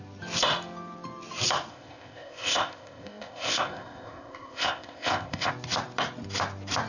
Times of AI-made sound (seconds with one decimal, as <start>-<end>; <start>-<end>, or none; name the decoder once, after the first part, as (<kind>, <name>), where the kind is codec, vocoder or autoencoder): 1.7-5.5 (codec, ZipCodec)